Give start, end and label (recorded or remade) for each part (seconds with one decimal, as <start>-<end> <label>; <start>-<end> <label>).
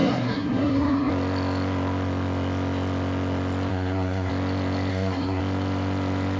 0.0-1.1 remade; 1.1-3.7 recorded; 3.7-4.3 remade; 4.3-4.9 recorded; 4.9-5.4 remade; 5.4-6.4 recorded